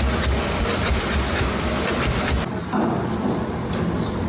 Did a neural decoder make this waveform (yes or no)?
no